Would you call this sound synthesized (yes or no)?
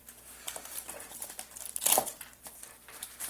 yes